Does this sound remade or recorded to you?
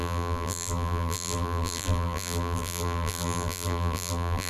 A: remade